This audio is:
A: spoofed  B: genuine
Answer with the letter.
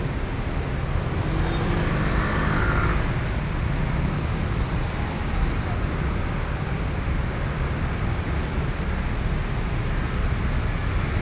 B